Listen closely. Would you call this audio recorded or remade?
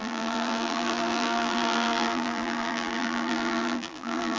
remade